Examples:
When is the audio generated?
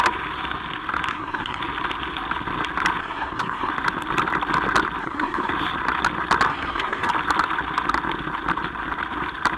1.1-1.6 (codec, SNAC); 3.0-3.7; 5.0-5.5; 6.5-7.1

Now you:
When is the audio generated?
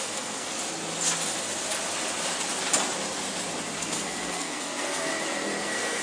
0.0-0.5 (codec, SNAC); 3.8-5.1; 5.6-6.0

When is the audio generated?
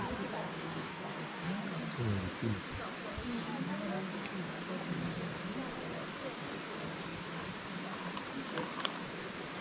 0.4-1.1 (codec, SNAC)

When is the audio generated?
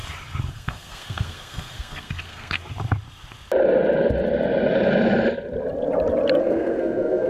0.5-2.6 (codec, SNAC); 6.4-7.3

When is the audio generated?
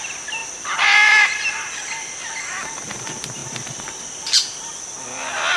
none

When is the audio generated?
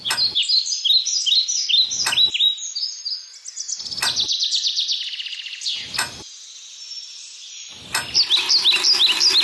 none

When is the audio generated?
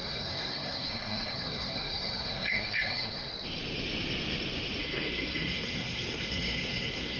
0.0-3.3 (codec, SNAC); 4.8-7.2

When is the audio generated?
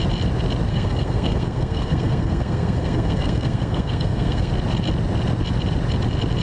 0.7-4.5 (codec, SNAC)